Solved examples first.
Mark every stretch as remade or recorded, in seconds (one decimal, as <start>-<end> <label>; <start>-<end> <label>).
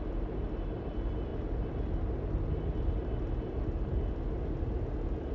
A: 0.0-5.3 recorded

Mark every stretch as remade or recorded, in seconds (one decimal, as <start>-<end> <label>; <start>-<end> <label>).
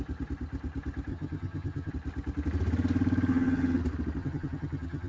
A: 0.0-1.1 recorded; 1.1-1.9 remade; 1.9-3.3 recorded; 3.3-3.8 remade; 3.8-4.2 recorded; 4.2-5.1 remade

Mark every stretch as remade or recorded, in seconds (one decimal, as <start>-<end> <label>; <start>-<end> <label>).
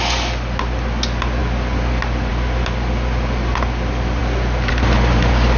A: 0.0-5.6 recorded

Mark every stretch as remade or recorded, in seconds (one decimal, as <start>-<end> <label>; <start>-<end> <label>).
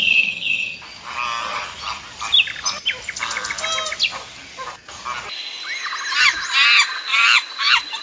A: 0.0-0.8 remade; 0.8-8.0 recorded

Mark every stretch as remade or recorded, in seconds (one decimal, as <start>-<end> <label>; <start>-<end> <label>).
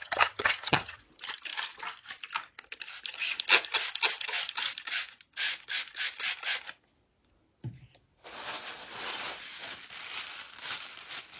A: 0.0-1.0 remade; 1.0-11.4 recorded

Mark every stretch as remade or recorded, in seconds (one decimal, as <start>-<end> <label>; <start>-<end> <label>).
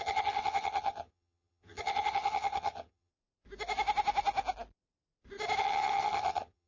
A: 0.0-3.1 remade; 3.1-5.6 recorded; 5.6-6.7 remade